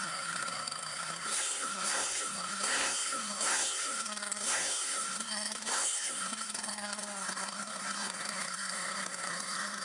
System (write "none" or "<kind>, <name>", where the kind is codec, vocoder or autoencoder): codec, SNAC